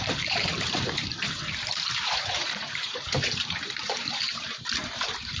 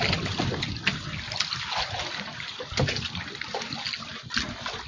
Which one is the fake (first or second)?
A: first